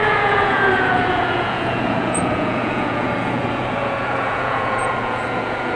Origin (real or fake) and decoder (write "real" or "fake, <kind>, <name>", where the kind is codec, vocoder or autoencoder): fake, vocoder, Vocos